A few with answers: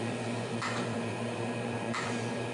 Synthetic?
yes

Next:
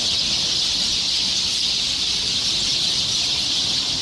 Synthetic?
no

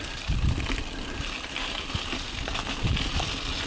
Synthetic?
no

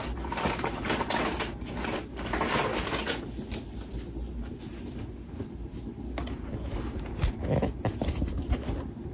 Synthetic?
no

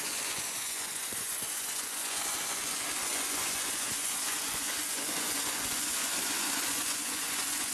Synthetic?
yes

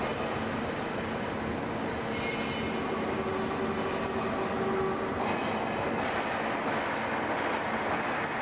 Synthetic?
no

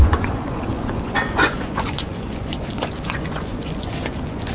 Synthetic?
yes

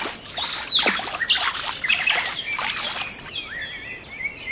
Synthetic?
no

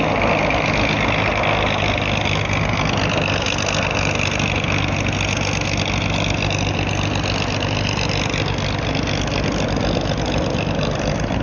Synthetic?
no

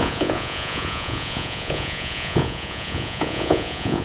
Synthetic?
yes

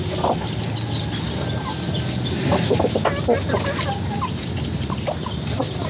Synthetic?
no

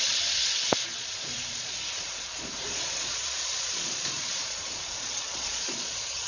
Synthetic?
yes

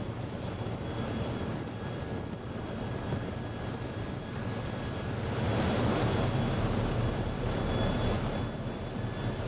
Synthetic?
no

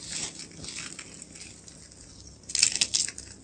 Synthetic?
no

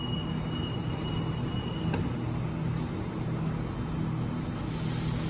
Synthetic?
no